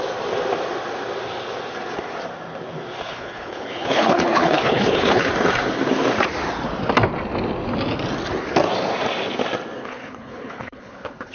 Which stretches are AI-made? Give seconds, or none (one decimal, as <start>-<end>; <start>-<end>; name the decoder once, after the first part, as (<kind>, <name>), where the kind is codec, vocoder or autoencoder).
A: 3.1-5.3 (codec, HILCodec); 9.8-11.3